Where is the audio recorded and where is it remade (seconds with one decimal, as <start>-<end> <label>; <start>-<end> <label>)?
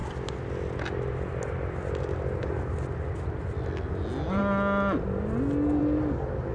0.0-6.5 recorded